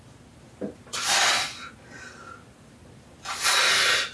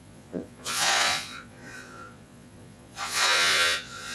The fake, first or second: second